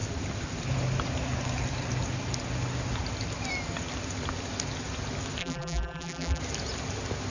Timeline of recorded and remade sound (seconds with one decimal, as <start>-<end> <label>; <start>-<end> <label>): 0.0-5.4 recorded; 5.4-6.4 remade; 6.4-7.3 recorded